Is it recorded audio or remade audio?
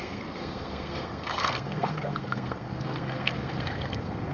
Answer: remade